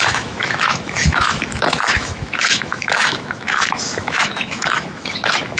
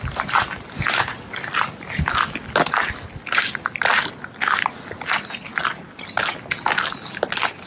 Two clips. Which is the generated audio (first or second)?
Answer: first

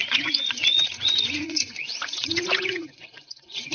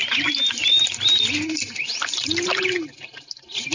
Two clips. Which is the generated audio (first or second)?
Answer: first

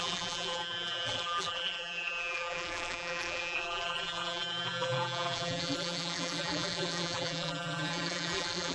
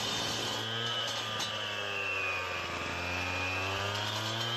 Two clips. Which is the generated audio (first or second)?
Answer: first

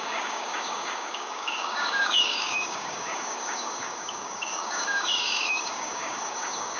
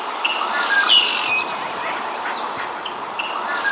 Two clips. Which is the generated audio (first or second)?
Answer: first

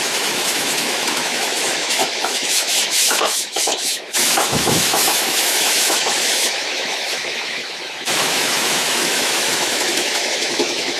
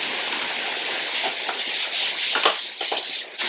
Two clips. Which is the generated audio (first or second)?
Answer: first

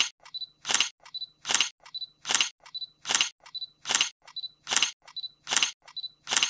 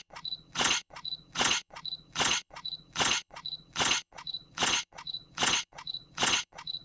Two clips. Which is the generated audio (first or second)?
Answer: second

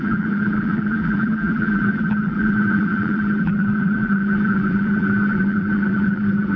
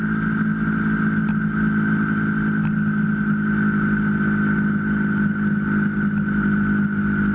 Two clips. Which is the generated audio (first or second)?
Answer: first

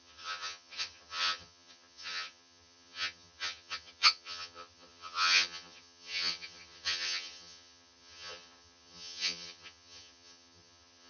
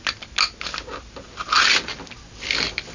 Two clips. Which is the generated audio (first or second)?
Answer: first